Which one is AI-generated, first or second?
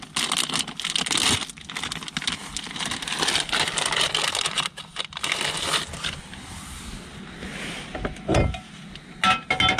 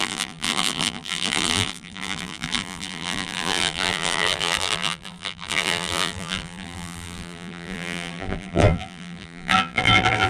second